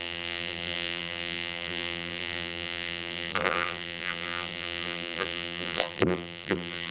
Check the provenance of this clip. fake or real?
fake